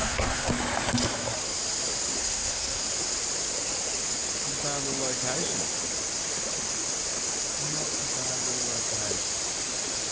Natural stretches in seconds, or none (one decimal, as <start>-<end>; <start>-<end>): 0.5-2.2; 2.8-10.1